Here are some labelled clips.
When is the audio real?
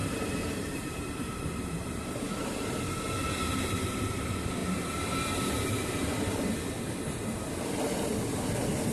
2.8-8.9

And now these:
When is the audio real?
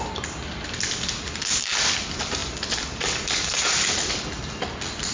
0.0-5.1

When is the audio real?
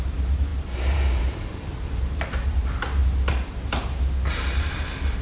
none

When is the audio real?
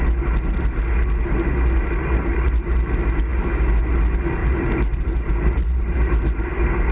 0.0-4.4; 6.1-6.9